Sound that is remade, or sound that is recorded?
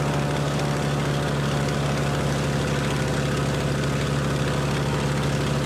recorded